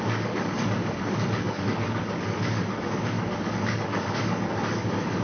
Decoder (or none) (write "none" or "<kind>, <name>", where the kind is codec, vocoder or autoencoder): codec, DAC